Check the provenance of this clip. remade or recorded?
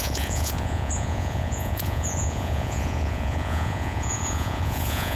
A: remade